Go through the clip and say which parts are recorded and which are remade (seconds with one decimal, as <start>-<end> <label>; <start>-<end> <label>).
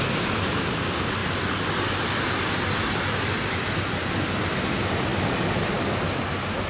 0.0-6.7 recorded